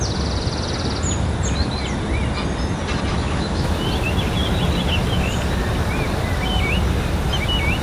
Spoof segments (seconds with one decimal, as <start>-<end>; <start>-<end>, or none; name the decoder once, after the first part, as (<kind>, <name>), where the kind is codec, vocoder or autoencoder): 3.1-3.8 (autoencoder, DAC-VAE)